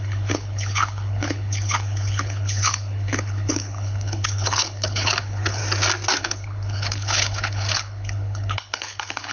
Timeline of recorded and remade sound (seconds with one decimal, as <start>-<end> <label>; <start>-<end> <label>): 0.0-5.6 remade; 5.6-6.2 recorded; 6.2-9.3 remade